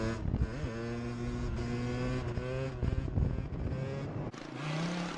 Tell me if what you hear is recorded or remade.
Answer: recorded